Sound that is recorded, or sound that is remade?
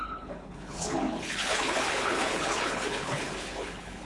remade